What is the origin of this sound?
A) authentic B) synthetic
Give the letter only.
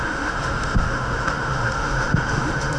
B